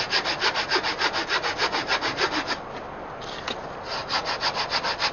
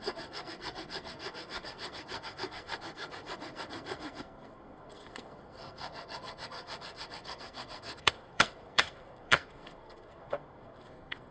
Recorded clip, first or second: first